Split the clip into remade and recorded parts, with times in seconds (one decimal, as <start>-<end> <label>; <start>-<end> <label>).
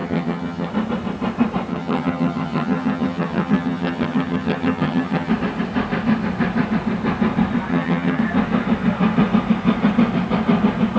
0.0-0.7 remade; 0.7-1.7 recorded; 1.7-5.3 remade; 5.3-7.7 recorded; 7.7-8.2 remade; 8.2-11.0 recorded